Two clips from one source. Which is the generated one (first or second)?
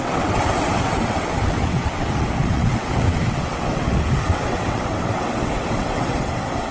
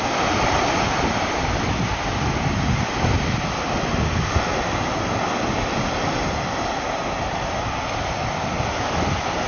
first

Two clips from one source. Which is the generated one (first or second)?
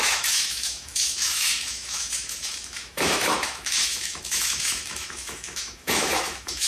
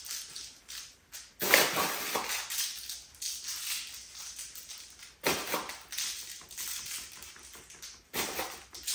first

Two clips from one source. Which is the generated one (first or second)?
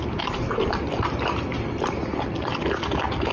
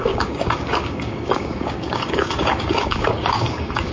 second